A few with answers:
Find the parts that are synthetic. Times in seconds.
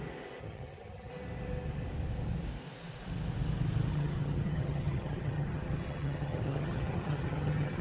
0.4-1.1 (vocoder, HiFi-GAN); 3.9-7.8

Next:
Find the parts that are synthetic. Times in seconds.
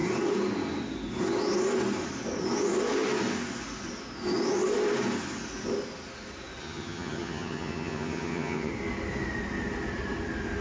6.6-8.7 (vocoder, HiFi-GAN)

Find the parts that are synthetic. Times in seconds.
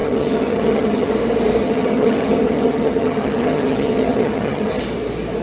0.0-1.1 (vocoder, HiFi-GAN); 1.6-4.8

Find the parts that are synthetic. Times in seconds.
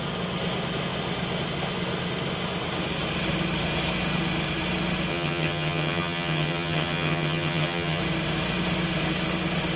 5.1-8.0 (vocoder, HiFi-GAN)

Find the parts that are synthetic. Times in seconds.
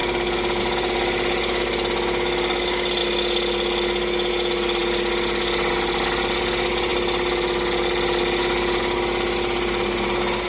none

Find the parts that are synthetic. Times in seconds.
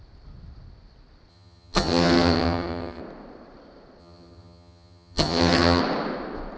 1.3-3.0 (vocoder, HiFi-GAN); 4.0-5.8